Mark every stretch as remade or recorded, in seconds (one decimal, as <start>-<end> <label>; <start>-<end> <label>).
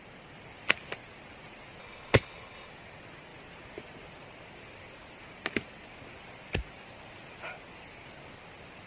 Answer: 0.0-1.8 recorded; 1.8-2.7 remade; 2.7-8.9 recorded